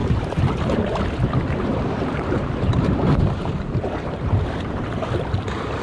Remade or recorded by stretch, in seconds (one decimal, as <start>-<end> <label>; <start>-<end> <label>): 0.0-1.0 remade; 1.0-1.7 recorded; 1.7-5.2 remade; 5.2-5.8 recorded